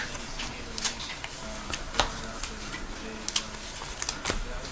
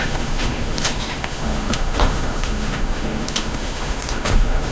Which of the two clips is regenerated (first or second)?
second